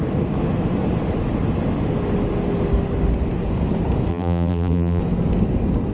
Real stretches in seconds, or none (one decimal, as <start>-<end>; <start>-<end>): 0.0-4.1; 5.0-5.9